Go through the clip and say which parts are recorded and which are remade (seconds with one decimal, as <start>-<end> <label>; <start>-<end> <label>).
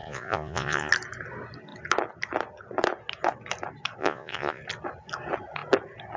0.0-0.9 remade; 0.9-4.0 recorded; 4.0-4.6 remade; 4.6-6.2 recorded